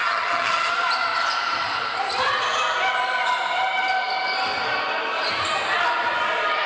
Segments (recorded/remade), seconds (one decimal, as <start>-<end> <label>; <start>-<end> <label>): 0.0-0.7 remade; 0.7-6.7 recorded